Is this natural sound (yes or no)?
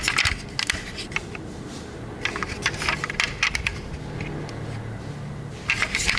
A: yes